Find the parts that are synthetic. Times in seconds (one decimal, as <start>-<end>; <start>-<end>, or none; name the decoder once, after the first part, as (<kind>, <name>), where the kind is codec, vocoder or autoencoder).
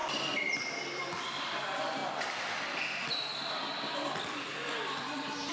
none